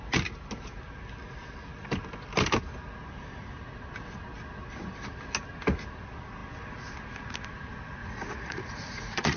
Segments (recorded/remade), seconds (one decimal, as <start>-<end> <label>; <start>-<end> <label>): 0.0-8.0 recorded; 8.0-9.4 remade